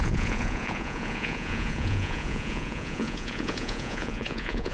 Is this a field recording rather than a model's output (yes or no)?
no